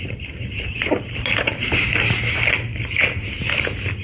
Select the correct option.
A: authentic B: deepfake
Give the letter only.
A